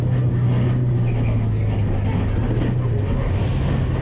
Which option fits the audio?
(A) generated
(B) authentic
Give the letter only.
B